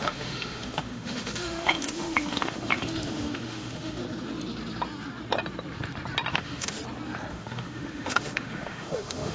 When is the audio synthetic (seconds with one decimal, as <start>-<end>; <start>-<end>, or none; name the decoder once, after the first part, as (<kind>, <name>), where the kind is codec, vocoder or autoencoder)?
0.0-4.0 (autoencoder, DAC-VAE); 6.3-6.8; 7.3-9.3